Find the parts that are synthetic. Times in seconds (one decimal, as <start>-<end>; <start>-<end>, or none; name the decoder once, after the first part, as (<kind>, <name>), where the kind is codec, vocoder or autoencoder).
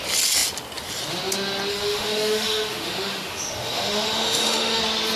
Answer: 1.7-4.8 (autoencoder, DAC-VAE)